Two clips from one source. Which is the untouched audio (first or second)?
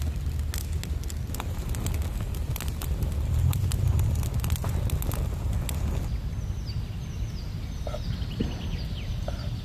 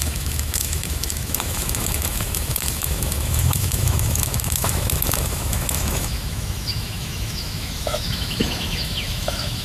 first